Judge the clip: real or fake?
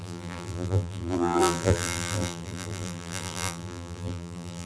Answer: fake